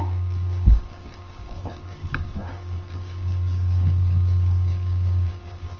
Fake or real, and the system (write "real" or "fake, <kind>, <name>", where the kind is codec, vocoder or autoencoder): fake, codec, DAC